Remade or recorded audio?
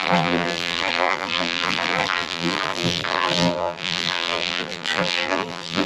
remade